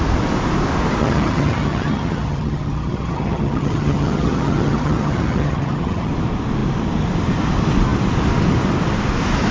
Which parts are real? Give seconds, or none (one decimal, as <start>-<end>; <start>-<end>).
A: 0.0-1.0; 6.1-9.5